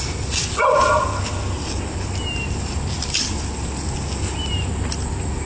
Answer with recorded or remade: recorded